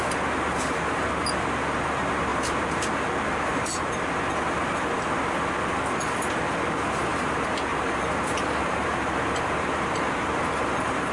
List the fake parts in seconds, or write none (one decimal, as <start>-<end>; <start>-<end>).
7.7-11.1